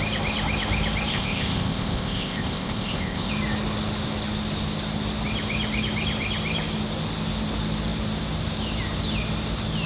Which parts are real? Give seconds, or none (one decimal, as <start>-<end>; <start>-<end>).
0.0-1.1; 3.3-9.9